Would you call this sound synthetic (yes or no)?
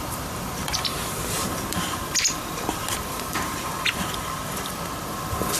yes